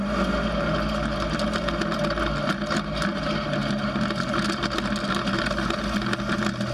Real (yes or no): yes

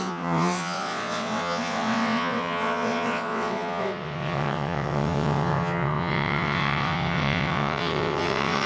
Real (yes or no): no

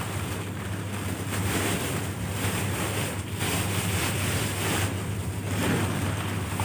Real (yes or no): no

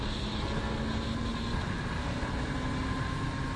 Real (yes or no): yes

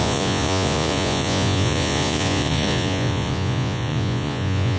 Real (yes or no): no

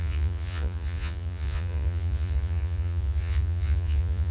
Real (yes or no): no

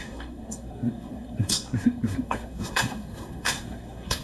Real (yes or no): no